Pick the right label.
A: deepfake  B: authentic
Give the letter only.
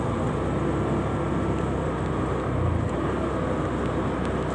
B